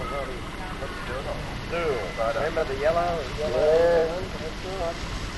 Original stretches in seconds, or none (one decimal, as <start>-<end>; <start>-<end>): 0.0-5.4